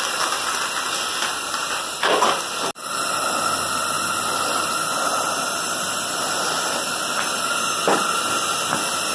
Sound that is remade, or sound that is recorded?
recorded